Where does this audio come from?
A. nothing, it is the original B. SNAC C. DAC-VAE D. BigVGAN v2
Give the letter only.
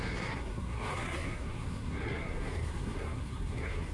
B